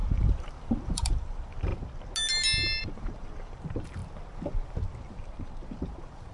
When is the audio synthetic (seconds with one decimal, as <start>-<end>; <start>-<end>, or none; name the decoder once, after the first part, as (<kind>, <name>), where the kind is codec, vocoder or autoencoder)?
0.0-1.7 (vocoder, BigVGAN v2); 2.8-4.0; 5.0-6.3